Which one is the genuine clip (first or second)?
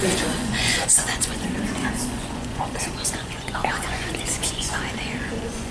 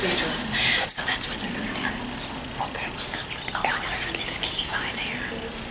second